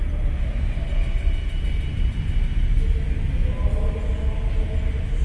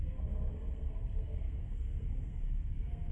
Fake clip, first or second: second